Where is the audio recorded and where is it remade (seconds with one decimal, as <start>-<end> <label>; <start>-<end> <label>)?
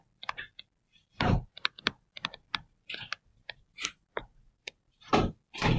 0.0-3.3 recorded; 3.3-5.1 remade; 5.1-5.8 recorded